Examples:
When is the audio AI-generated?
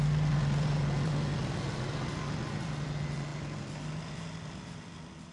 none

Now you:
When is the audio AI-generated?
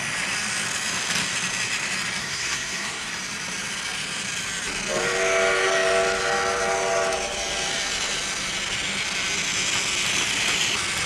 2.2-3.1 (codec, SNAC)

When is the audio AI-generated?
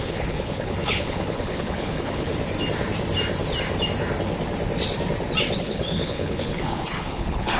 0.0-2.3 (codec, HILCodec); 5.6-7.6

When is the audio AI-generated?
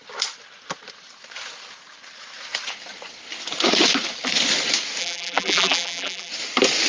5.0-6.3 (vocoder, BigVGAN v2)